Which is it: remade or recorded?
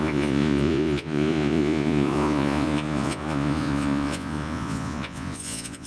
remade